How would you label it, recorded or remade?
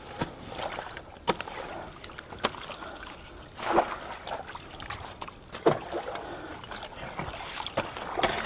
recorded